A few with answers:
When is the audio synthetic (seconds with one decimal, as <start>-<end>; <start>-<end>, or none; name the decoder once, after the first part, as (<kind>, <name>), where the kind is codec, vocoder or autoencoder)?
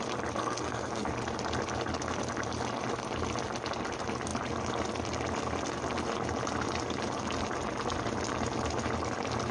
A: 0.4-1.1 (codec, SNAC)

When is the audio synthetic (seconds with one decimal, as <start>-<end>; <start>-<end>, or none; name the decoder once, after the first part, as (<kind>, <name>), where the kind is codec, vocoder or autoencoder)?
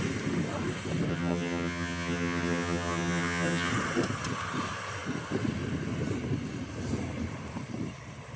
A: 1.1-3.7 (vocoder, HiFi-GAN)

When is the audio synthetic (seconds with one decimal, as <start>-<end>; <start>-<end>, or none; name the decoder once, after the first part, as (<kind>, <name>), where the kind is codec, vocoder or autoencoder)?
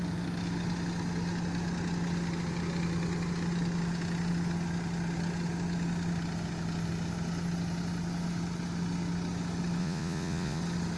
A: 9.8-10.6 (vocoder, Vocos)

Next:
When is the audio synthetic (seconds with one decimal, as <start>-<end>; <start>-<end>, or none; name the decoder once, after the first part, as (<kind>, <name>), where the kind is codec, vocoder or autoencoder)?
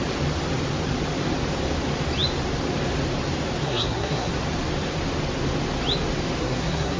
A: 3.6-4.3 (codec, SNAC); 6.4-7.0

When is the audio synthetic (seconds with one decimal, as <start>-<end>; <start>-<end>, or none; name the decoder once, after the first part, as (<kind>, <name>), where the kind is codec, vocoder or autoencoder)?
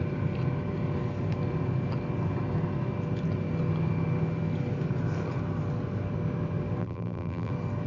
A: 6.8-7.5 (vocoder, BigVGAN v2)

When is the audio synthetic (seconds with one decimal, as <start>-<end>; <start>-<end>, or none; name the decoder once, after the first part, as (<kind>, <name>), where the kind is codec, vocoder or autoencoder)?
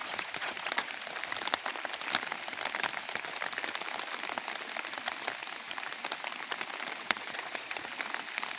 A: 0.0-0.9 (vocoder, Vocos); 7.0-7.9